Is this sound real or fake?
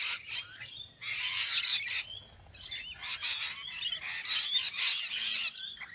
real